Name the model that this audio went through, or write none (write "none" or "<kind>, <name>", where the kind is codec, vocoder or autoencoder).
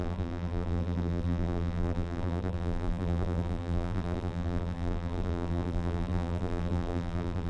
vocoder, BigVGAN v2